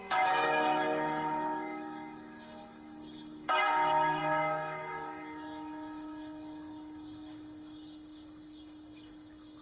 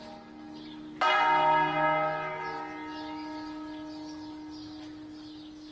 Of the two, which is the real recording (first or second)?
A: second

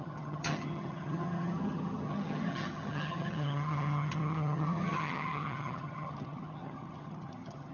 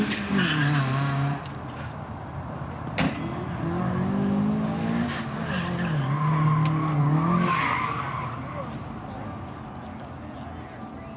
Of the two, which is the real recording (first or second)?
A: second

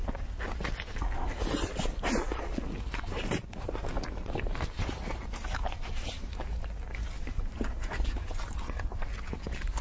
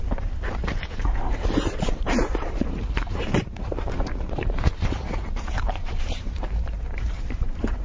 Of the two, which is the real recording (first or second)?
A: first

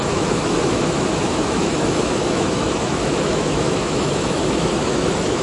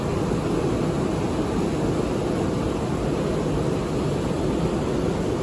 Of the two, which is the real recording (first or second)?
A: second